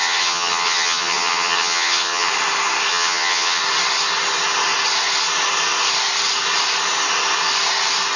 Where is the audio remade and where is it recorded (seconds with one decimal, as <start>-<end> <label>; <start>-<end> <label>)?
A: 0.0-2.3 remade; 2.3-2.9 recorded; 2.9-3.6 remade; 3.6-8.2 recorded